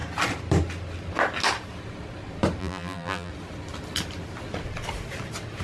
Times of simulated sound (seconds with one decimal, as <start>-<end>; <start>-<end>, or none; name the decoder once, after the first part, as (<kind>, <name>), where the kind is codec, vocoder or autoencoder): 2.6-3.3 (vocoder, BigVGAN v2)